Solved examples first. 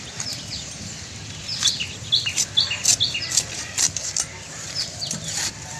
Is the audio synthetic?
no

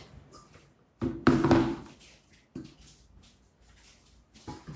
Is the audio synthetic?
no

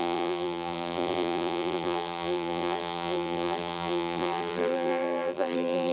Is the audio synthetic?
yes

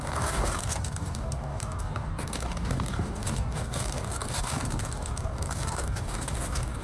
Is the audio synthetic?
yes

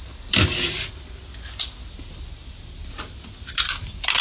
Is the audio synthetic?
no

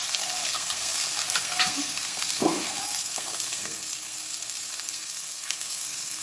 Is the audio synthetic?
yes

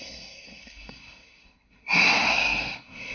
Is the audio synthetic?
yes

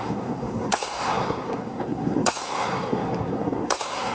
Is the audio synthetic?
yes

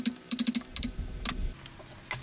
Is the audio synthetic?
no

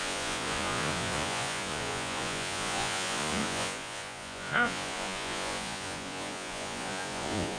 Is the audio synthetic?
yes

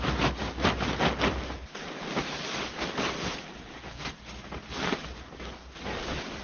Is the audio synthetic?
no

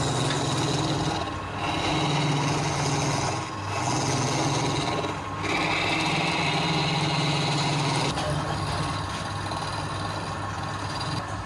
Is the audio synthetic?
no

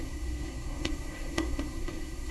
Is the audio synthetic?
yes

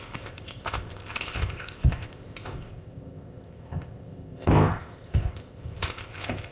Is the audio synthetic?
yes